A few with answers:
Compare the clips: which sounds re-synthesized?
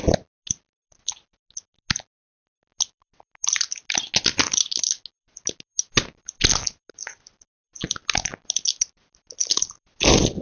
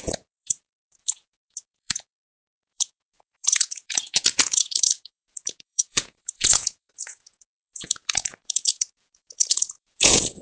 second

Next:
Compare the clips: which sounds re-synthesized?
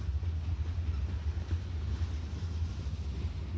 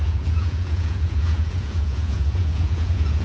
second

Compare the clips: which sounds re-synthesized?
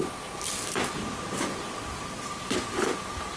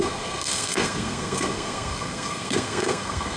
second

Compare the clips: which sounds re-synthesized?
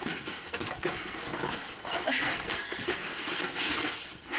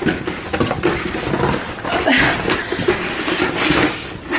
first